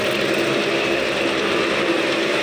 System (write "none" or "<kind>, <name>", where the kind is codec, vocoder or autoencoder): none